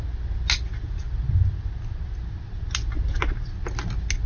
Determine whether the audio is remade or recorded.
recorded